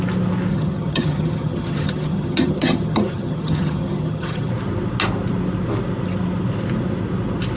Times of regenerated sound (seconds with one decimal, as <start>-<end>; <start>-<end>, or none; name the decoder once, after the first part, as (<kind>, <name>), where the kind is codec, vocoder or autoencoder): 0.5-4.5 (vocoder, HiFi-GAN)